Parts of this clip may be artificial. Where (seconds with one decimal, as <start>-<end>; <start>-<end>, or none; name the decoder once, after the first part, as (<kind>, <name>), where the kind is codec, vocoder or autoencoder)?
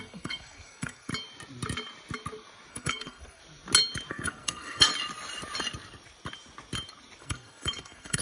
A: 0.0-1.1 (codec, SNAC); 2.7-3.4; 4.1-4.9; 7.2-8.2